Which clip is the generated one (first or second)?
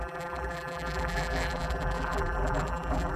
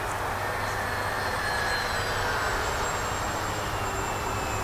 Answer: first